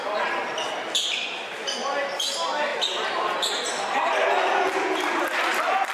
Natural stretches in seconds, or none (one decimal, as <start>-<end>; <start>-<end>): 0.0-2.7; 5.2-5.9